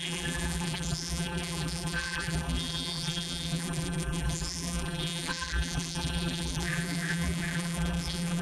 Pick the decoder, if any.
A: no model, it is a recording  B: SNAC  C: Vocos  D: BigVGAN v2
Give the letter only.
D